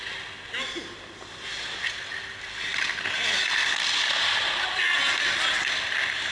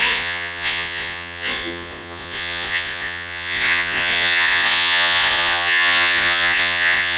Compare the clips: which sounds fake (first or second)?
second